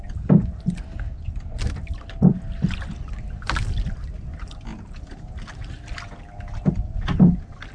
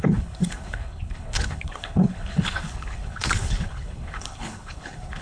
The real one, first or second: first